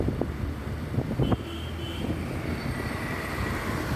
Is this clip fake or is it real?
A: real